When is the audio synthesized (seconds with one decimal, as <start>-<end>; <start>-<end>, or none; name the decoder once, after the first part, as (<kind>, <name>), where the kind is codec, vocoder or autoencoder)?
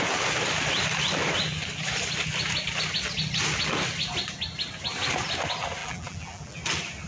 5.8-6.6 (vocoder, BigVGAN v2)